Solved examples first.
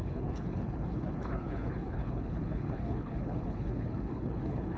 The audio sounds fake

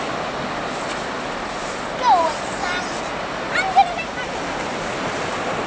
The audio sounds real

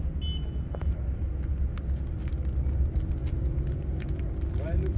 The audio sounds real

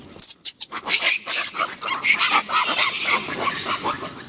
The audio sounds fake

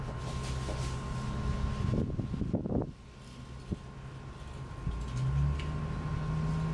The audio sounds real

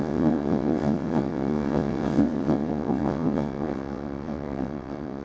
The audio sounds fake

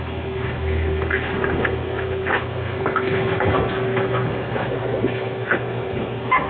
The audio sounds fake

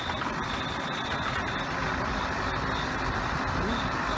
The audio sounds real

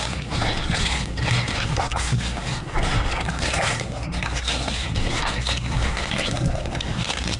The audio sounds fake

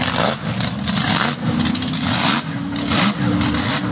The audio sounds real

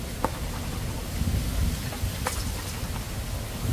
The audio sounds real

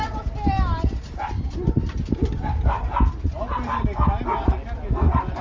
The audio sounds real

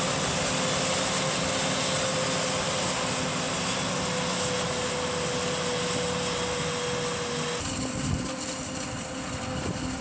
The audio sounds real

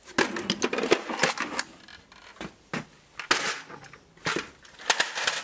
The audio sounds real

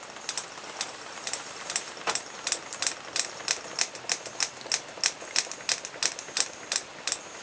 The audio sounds real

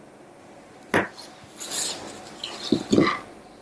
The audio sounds real